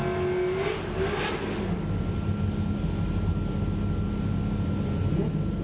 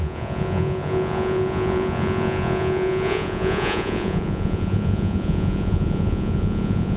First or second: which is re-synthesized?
second